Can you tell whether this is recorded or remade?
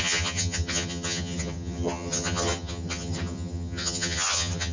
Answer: remade